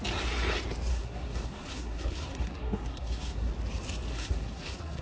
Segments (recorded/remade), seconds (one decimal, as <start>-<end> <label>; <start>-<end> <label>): 0.0-0.9 recorded; 0.9-3.5 remade; 3.5-4.1 recorded; 4.1-5.0 remade